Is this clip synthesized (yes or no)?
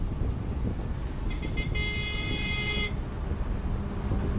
no